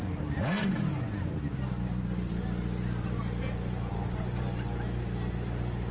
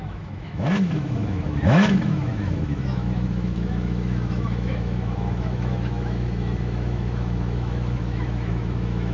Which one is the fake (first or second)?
second